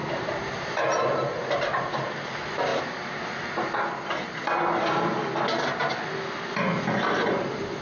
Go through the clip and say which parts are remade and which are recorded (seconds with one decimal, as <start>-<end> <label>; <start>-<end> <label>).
0.0-2.7 remade; 2.7-7.1 recorded; 7.1-7.8 remade